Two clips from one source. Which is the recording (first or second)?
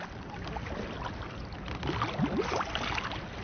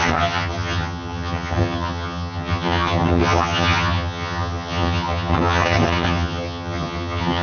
first